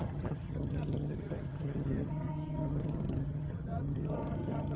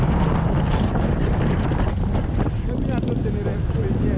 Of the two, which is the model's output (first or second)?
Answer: first